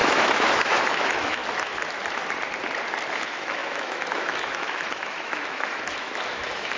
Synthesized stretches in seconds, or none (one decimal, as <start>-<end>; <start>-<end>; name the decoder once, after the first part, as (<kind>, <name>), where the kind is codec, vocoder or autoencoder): 0.0-1.4 (autoencoder, DAC-VAE); 3.1-6.8